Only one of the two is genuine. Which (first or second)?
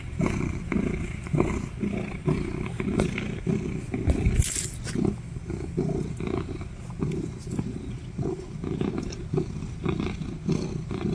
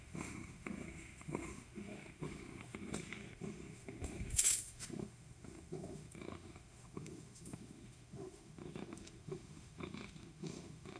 first